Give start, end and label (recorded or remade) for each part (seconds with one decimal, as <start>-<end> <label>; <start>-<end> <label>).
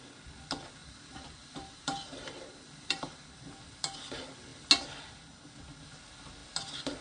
0.0-0.8 recorded; 0.8-3.3 remade; 3.3-7.0 recorded